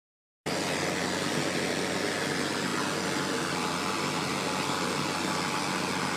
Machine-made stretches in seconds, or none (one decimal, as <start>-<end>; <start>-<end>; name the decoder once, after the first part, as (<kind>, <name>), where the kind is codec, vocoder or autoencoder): none